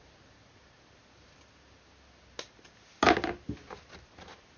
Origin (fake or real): real